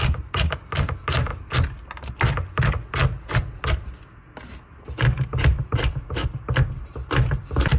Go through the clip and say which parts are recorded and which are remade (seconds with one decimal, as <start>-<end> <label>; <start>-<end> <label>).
0.0-7.8 recorded